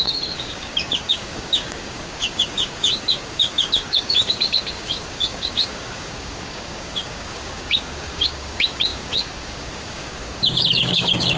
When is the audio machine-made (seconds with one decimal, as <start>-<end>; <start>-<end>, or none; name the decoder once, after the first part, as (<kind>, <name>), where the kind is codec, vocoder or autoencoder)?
0.0-11.4 (codec, DAC)